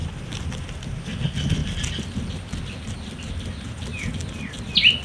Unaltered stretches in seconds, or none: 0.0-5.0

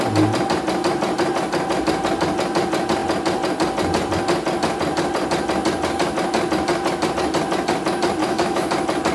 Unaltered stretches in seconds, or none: 0.0-8.2; 8.7-9.1

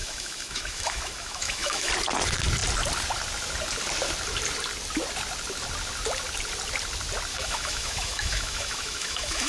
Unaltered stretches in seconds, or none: 1.9-7.3

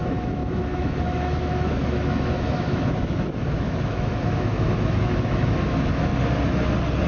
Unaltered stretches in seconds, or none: 6.1-7.1

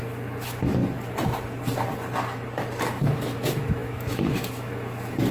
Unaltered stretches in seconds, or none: 0.8-2.8

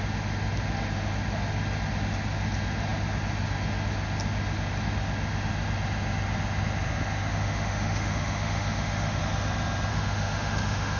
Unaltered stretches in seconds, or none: 0.0-7.3; 9.2-9.9